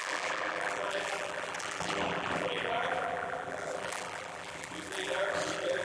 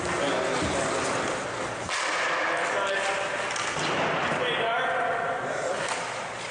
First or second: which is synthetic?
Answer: first